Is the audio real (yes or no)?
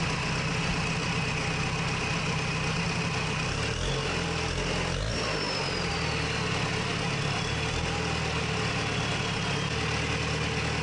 yes